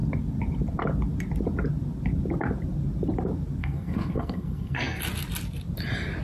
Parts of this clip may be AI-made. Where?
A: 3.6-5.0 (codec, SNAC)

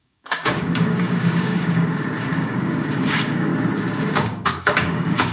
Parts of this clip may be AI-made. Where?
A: 0.0-3.5 (codec, DAC); 4.1-5.3

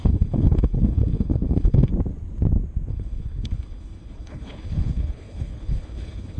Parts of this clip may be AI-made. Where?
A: 0.0-1.9 (codec, HILCodec); 2.9-6.4

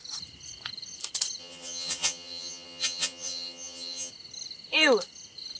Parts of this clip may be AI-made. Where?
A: 1.4-4.1 (vocoder, HiFi-GAN)

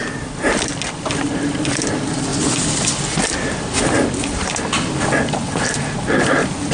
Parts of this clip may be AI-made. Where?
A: none

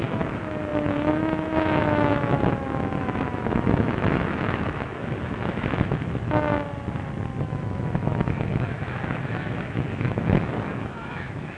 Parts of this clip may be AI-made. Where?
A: 0.0-6.5 (autoencoder, DAC-VAE); 7.4-11.6

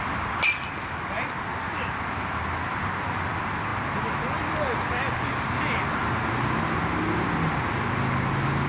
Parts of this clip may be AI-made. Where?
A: none